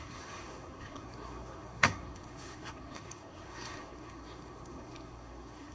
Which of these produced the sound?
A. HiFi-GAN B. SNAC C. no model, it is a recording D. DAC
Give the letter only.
B